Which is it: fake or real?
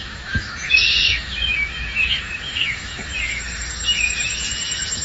fake